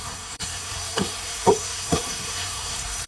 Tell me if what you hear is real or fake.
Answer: fake